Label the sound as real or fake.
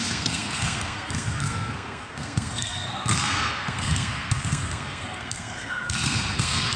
fake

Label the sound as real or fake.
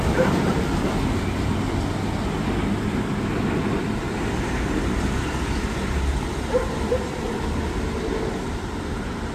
real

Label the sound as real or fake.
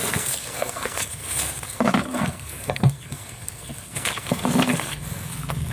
fake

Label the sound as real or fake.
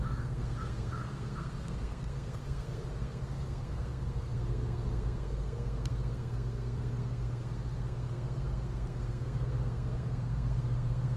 fake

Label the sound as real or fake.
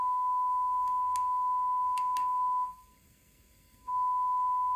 fake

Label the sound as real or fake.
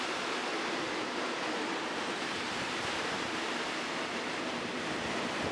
real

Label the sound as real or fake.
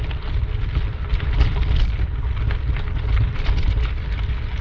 real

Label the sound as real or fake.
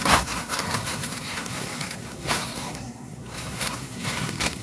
fake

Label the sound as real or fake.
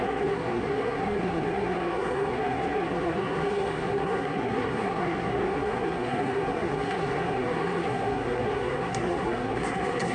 fake